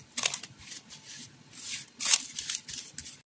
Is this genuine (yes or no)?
yes